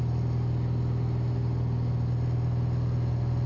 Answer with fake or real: real